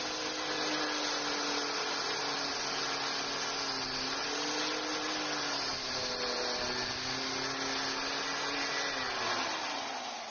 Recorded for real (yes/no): yes